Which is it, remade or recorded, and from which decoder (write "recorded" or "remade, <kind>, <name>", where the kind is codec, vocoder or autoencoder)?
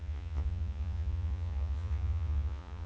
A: remade, vocoder, Vocos